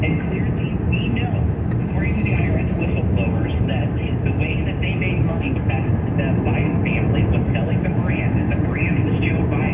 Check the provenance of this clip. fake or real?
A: real